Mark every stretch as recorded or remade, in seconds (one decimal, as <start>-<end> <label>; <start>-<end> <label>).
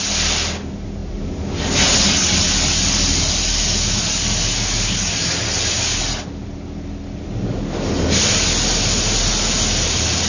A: 0.0-10.3 recorded